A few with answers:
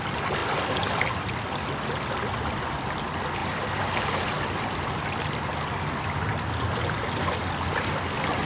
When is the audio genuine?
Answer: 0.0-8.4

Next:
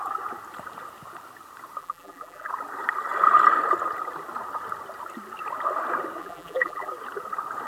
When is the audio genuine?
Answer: 0.0-1.8; 2.5-6.2; 6.9-7.7